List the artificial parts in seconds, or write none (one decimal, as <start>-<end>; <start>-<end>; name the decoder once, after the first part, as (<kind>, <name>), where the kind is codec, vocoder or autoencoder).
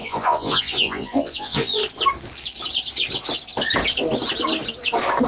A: 0.0-1.8 (vocoder, Vocos)